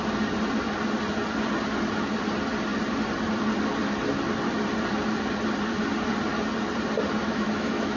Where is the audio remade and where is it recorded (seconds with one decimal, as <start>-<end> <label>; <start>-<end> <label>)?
0.0-7.2 recorded; 7.2-8.0 remade